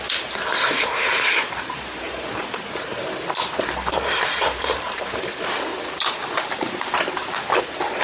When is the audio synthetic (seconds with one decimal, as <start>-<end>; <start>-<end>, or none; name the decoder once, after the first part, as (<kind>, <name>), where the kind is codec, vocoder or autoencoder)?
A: 0.0-2.9 (vocoder, BigVGAN v2); 3.9-5.7; 6.5-8.0